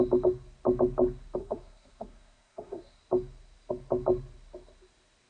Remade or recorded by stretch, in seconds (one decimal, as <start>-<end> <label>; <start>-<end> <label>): 0.0-1.4 recorded; 1.4-3.0 remade; 3.0-5.3 recorded